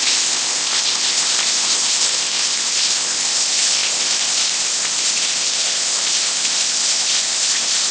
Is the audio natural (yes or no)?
no